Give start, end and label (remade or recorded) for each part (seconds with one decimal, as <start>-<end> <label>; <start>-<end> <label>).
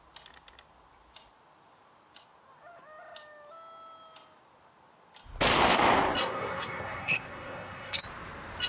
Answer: 0.0-6.2 recorded; 6.2-8.0 remade; 8.0-8.7 recorded